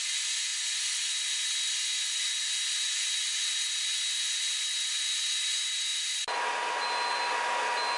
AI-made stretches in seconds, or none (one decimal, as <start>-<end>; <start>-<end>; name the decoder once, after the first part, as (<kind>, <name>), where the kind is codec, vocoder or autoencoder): none

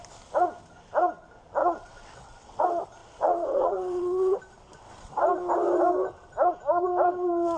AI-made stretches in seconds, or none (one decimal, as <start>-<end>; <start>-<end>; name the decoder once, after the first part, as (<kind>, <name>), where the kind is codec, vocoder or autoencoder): 1.6-2.6 (vocoder, WaveNeXt); 3.0-4.4

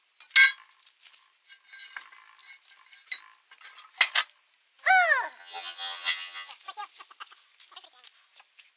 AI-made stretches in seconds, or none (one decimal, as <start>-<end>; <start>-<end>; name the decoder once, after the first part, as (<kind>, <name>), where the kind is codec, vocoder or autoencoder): 5.4-6.5 (vocoder, HiFi-GAN)